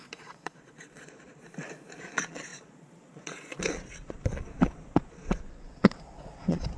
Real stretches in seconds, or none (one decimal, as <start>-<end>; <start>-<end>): 1.4-2.0